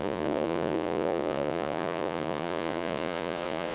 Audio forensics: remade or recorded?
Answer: remade